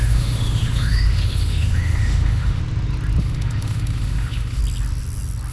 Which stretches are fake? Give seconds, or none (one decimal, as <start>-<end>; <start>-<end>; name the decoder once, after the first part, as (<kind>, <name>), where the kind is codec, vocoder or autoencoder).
0.0-2.6 (autoencoder, DAC-VAE); 3.2-4.6